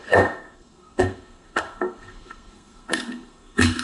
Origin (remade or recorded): remade